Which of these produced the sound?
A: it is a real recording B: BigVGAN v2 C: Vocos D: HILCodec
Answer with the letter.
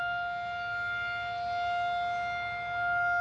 A